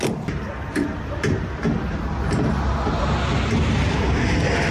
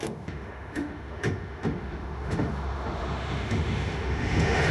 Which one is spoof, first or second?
second